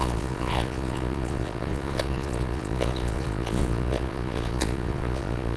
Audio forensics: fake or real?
fake